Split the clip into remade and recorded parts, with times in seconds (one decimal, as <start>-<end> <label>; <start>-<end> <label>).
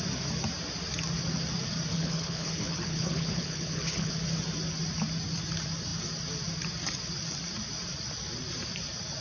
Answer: 0.0-1.9 recorded; 1.9-4.1 remade; 4.1-9.2 recorded